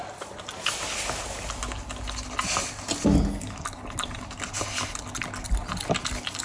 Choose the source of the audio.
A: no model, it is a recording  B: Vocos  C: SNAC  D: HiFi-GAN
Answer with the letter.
A